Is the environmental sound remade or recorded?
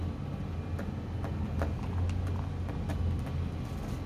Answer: recorded